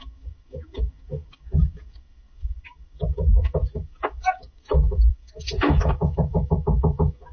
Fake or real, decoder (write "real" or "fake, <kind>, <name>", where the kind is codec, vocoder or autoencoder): fake, autoencoder, DAC-VAE